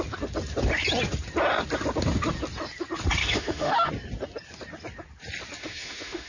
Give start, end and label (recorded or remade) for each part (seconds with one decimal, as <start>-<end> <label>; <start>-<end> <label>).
0.0-3.2 recorded; 3.2-3.9 remade; 3.9-5.6 recorded; 5.6-6.3 remade